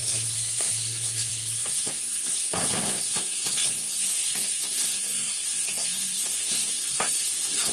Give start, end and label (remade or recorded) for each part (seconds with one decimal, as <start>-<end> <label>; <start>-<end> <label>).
0.0-7.7 remade